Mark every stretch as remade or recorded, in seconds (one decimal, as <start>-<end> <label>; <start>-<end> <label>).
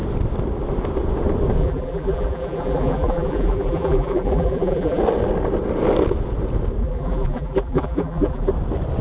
0.0-1.6 recorded; 1.6-5.0 remade; 5.0-6.8 recorded; 6.8-8.5 remade; 8.5-9.0 recorded